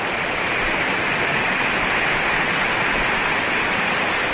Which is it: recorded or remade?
recorded